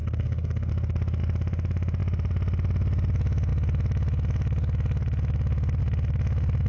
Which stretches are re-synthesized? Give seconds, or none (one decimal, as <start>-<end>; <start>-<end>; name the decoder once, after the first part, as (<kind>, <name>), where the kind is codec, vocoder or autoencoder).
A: 0.0-0.7 (codec, SNAC)